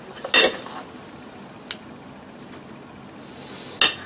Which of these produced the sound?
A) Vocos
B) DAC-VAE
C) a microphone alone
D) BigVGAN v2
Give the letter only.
C